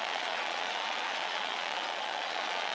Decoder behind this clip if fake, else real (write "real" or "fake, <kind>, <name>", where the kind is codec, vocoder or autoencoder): fake, vocoder, Vocos